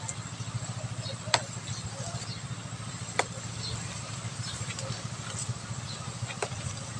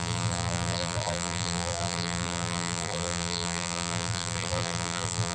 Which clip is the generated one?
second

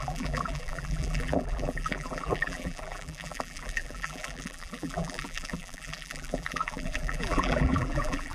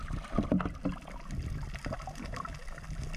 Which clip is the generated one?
first